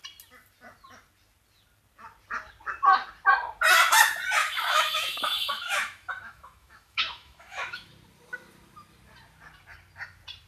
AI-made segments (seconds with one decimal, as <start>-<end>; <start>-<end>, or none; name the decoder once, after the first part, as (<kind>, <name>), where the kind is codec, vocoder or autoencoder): 4.4-7.9 (autoencoder, DAC-VAE)